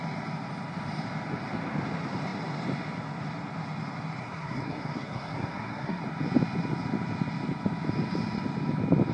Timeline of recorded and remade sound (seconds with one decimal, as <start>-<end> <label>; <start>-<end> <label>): 0.0-4.2 recorded; 4.2-6.0 remade; 6.0-9.1 recorded